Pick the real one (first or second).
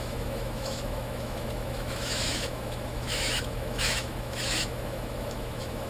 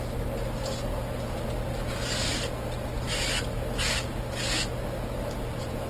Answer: second